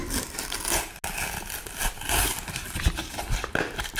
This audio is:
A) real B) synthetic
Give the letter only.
A